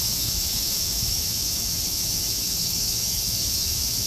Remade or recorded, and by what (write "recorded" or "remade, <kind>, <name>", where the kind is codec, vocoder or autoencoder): remade, autoencoder, DAC-VAE